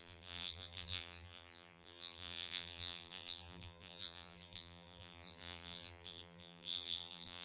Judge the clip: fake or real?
fake